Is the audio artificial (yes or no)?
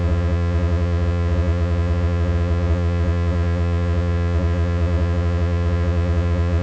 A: yes